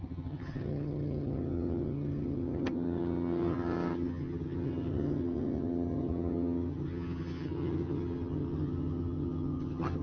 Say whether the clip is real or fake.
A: fake